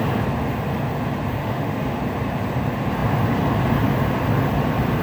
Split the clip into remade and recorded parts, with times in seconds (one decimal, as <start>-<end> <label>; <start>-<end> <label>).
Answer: 0.0-1.4 recorded; 1.4-2.0 remade; 2.0-5.0 recorded